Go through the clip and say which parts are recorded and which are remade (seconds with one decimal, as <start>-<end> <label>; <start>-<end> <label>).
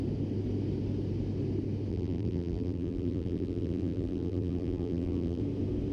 0.0-1.9 recorded; 1.9-5.4 remade; 5.4-5.9 recorded